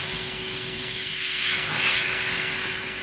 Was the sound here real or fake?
fake